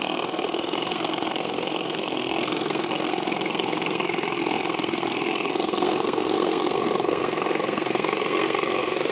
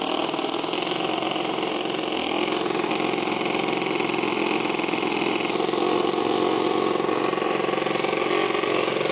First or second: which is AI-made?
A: first